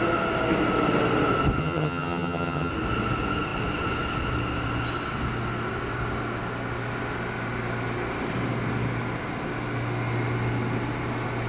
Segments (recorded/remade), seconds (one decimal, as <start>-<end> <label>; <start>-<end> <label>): 0.0-1.6 recorded; 1.6-2.7 remade; 2.7-11.5 recorded